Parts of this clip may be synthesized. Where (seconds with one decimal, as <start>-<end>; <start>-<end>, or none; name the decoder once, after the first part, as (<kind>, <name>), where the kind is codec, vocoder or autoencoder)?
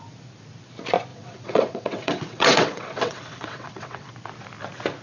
1.1-4.1 (vocoder, WaveNeXt)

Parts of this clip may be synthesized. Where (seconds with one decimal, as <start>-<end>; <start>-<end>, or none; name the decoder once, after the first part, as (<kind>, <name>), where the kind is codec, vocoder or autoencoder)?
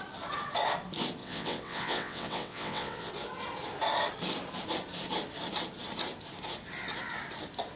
1.2-3.1 (vocoder, WaveNeXt)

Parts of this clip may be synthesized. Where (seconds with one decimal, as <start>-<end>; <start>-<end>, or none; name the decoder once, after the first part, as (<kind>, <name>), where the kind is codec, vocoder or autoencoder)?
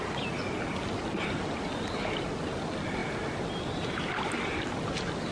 none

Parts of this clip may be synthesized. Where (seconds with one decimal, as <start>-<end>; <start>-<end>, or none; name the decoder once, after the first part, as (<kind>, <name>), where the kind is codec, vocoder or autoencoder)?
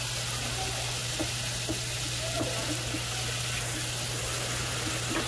none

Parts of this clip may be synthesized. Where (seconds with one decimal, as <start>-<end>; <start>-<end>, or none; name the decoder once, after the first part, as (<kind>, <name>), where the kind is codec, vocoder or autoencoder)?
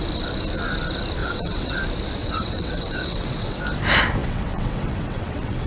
1.2-1.7 (vocoder, WaveNeXt); 2.2-3.6; 4.2-5.7